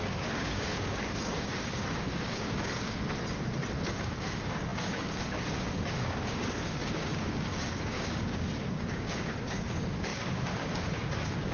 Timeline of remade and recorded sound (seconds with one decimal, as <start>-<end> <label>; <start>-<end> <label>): 0.0-3.0 remade; 3.0-3.9 recorded; 3.9-11.5 remade